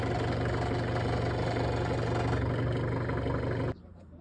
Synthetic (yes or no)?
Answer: no